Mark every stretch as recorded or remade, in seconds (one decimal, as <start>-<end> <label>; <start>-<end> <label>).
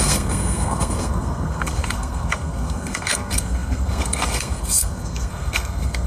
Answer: 0.0-6.1 remade